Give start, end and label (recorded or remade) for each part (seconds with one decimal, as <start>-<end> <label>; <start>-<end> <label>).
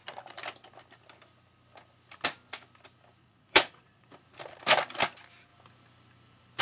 0.0-3.2 recorded; 3.2-4.1 remade; 4.1-6.6 recorded